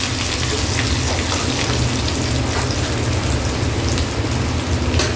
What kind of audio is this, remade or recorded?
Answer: recorded